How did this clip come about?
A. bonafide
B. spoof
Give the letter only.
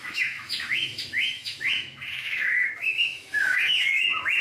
B